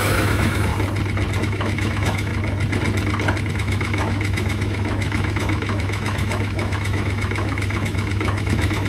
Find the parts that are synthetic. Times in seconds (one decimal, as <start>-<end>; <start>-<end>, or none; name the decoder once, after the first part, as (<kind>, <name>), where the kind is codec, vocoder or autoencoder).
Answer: 0.0-0.7 (autoencoder, DAC-VAE); 1.4-2.3; 3.5-8.9